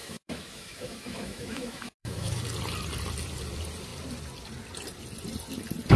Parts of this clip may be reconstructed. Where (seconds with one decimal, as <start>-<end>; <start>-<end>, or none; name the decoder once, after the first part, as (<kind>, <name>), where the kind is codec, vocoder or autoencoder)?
0.0-2.4 (autoencoder, DAC-VAE)